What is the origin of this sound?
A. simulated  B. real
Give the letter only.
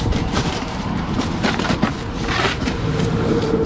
A